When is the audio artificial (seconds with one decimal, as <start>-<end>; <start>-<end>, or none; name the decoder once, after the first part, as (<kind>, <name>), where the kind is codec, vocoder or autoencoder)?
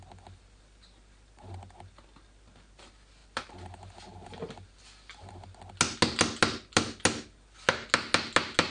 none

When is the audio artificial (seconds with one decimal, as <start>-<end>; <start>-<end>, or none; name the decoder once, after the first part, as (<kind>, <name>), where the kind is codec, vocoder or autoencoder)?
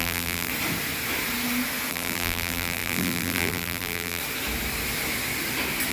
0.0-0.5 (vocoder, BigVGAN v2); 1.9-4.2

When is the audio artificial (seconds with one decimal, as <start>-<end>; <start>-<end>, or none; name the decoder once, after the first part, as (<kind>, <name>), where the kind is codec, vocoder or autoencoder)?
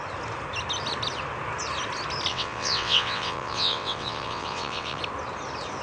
2.3-5.0 (vocoder, WaveNeXt)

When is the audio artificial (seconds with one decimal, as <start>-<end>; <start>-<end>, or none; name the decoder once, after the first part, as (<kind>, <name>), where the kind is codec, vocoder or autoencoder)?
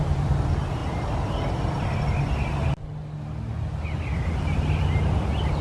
none